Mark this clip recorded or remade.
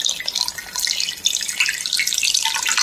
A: recorded